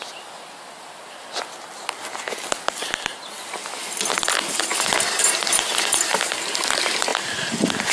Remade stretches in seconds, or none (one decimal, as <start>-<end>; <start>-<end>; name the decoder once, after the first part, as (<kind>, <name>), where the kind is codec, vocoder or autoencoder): none